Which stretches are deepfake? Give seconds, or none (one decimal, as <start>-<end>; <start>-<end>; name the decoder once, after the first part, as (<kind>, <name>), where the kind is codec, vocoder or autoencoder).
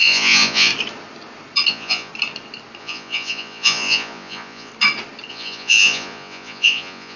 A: 0.0-0.7 (vocoder, Vocos); 1.7-2.1; 2.8-4.7; 5.3-7.2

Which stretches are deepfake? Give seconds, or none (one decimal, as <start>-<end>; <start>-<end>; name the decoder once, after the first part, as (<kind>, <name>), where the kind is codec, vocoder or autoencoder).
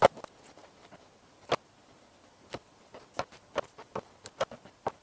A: none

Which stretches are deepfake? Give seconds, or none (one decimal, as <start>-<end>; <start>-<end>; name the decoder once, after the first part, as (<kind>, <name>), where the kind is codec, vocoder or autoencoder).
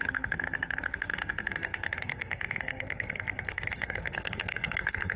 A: 0.0-5.2 (codec, SNAC)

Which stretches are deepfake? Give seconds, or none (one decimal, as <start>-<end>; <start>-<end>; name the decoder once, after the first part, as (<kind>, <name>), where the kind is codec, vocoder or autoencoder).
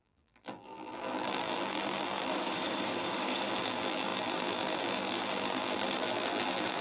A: 0.0-2.3 (vocoder, BigVGAN v2); 3.5-6.8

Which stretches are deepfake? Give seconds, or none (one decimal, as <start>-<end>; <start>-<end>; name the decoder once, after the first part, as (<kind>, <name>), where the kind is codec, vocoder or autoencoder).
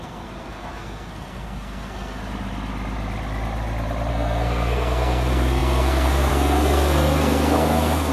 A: 0.0-2.2 (codec, SNAC); 4.1-8.1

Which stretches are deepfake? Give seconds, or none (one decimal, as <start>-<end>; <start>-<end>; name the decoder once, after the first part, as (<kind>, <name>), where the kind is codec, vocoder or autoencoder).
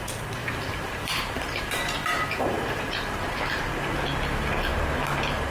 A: 0.4-3.7 (vocoder, BigVGAN v2)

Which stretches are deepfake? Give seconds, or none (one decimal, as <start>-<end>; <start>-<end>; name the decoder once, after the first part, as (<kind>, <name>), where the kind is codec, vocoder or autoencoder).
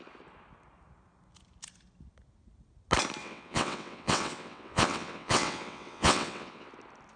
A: 3.2-6.7 (vocoder, WaveNeXt)